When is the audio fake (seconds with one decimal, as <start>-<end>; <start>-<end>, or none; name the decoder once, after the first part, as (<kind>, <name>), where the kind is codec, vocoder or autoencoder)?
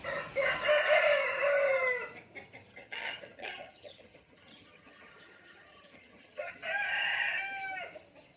2.7-6.5 (vocoder, HiFi-GAN)